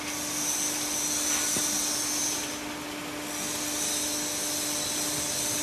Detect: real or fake real